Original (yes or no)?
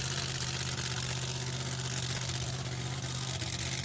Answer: yes